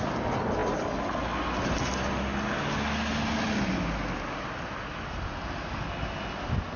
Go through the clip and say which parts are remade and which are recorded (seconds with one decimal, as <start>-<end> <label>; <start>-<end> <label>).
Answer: 0.0-6.8 recorded